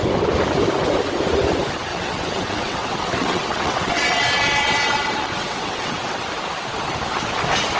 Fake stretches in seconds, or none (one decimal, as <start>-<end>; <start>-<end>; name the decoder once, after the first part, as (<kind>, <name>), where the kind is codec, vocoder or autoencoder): 1.9-6.2 (vocoder, WaveNeXt)